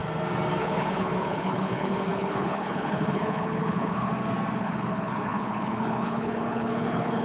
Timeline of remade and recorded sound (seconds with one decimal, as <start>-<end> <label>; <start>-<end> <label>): 0.0-0.6 recorded; 0.6-4.1 remade; 4.1-4.6 recorded; 4.6-7.2 remade